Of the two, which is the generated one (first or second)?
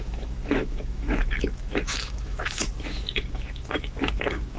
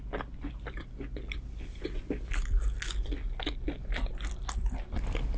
first